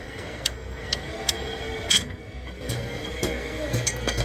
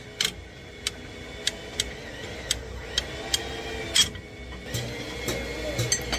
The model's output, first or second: first